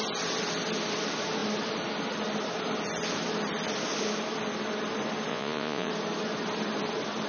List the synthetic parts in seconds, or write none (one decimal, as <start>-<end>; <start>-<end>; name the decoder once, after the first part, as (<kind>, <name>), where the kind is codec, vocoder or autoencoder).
5.3-5.9 (vocoder, Vocos)